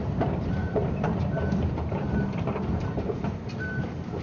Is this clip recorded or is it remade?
remade